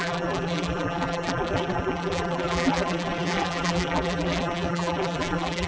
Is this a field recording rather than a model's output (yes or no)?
no